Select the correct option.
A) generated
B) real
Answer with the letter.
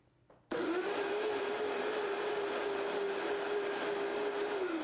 B